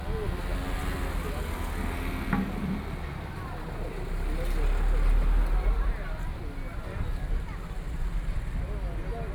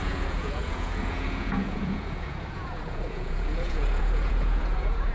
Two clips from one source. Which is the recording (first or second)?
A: first